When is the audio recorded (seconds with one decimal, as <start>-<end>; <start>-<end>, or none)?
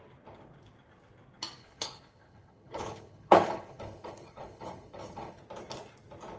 0.0-1.6; 5.4-6.4